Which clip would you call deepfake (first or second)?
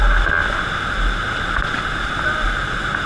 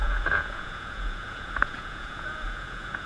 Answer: second